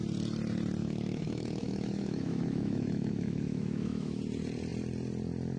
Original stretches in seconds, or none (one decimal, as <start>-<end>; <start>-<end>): 0.0-0.8; 4.2-5.6